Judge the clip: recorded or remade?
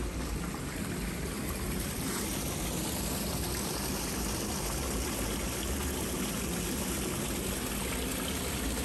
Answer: recorded